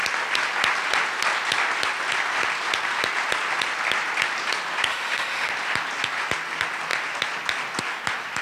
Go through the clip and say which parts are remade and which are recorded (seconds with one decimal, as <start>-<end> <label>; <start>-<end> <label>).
0.0-4.9 recorded; 4.9-5.5 remade; 5.5-8.4 recorded